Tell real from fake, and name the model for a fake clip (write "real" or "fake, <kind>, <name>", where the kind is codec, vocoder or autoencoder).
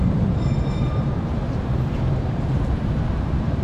fake, vocoder, BigVGAN v2